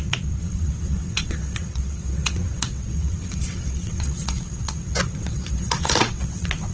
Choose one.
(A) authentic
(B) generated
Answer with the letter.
B